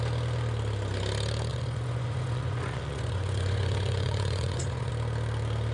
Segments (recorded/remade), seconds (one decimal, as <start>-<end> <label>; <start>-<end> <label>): 0.0-1.5 recorded; 1.5-4.9 remade; 4.9-5.7 recorded

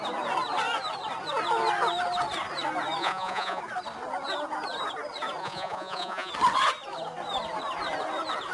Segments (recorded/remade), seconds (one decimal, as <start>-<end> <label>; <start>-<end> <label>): 0.0-3.0 recorded; 3.0-3.6 remade; 3.6-5.4 recorded; 5.4-6.3 remade; 6.3-8.5 recorded

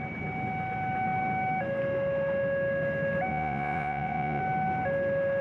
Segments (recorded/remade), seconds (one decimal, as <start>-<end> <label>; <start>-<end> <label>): 0.0-3.3 recorded; 3.3-4.4 remade; 4.4-5.4 recorded